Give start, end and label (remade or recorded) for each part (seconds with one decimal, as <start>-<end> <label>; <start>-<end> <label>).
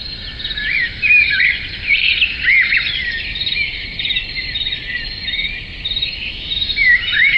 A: 0.0-2.1 remade; 2.1-3.5 recorded; 3.5-4.2 remade; 4.2-5.2 recorded; 5.2-7.4 remade